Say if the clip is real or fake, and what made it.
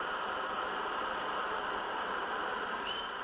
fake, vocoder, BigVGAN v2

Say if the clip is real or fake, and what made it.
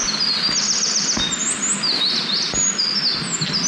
real